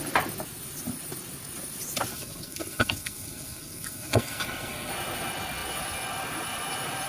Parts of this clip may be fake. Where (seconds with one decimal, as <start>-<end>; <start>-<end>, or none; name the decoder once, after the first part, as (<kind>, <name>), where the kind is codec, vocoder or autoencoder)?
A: 2.1-4.9 (codec, SNAC)